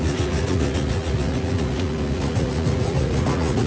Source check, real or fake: fake